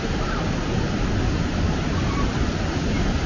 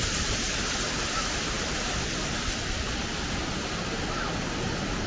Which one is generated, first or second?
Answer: first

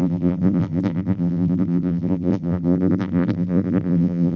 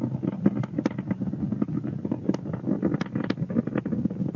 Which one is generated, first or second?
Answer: first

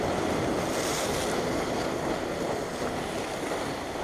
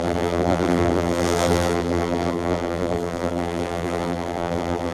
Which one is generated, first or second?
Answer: second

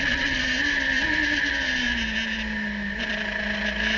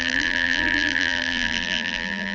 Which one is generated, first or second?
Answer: second